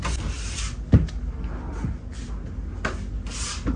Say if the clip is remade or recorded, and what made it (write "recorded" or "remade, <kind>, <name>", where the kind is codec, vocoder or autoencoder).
recorded